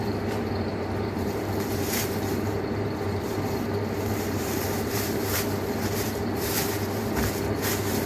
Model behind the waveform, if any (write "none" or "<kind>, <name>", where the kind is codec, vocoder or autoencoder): vocoder, BigVGAN v2